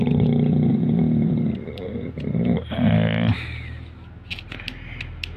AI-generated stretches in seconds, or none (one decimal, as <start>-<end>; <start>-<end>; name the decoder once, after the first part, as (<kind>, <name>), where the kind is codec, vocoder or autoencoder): 0.7-2.9 (vocoder, BigVGAN v2)